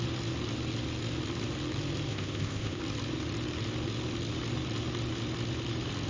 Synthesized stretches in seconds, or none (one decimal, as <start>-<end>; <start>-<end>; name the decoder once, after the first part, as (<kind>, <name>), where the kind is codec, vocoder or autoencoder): 2.1-2.8 (codec, ZipCodec)